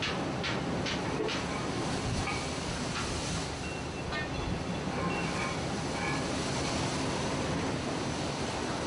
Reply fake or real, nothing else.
real